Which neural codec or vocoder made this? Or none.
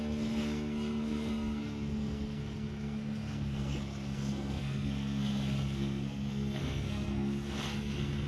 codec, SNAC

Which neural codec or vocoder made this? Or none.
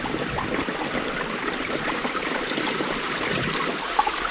none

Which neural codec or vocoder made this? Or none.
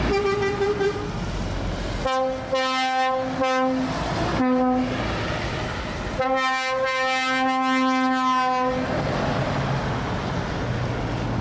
none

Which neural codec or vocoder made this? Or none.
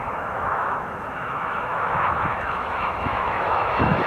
autoencoder, DAC-VAE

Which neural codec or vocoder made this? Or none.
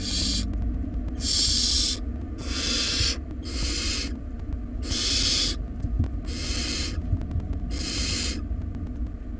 none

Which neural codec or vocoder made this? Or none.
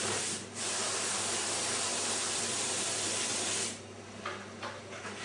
vocoder, BigVGAN v2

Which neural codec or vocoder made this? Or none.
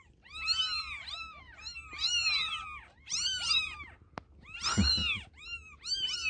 none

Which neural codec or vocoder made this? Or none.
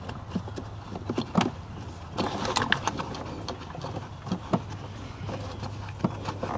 none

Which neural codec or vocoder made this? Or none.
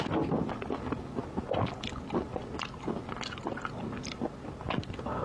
none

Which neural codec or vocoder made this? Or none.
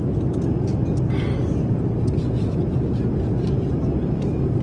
none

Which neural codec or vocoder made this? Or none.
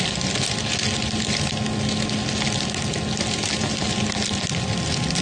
none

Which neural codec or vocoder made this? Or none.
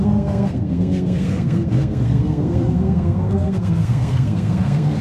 codec, SNAC